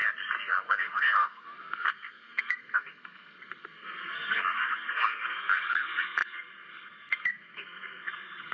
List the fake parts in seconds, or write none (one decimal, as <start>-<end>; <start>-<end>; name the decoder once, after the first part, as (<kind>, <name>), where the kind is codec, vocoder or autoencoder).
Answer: 0.5-8.5 (codec, SNAC)